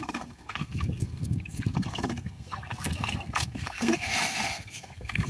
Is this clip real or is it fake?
fake